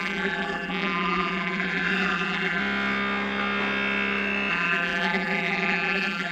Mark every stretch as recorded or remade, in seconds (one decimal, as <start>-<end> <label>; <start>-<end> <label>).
0.0-2.6 remade; 2.6-4.5 recorded; 4.5-6.3 remade